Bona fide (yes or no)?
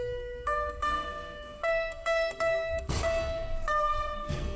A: no